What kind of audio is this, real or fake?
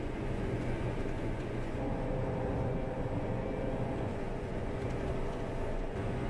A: fake